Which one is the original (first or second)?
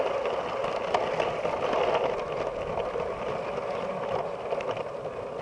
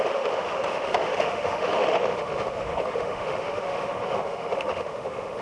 first